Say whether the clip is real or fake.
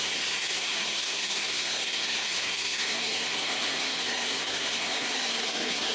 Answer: fake